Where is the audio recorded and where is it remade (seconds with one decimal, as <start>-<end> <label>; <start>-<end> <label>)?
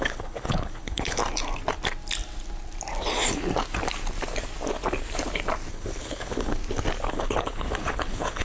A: 0.0-1.2 remade; 1.2-5.7 recorded; 5.7-6.6 remade; 6.6-7.1 recorded; 7.1-8.4 remade